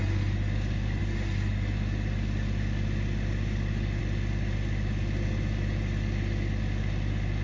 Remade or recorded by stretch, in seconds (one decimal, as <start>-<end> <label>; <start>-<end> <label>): 0.0-7.4 recorded